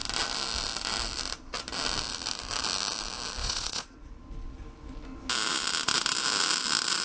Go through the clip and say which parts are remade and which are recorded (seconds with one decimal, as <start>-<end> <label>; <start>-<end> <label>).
0.0-3.4 recorded; 3.4-4.2 remade; 4.2-7.0 recorded